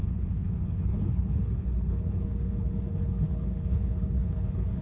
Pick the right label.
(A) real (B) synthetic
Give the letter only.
B